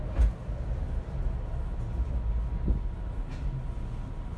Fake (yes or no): no